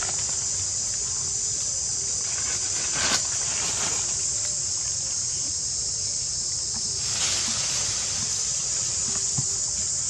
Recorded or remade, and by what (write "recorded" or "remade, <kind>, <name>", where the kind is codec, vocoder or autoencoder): recorded